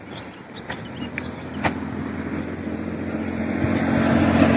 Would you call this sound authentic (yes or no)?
yes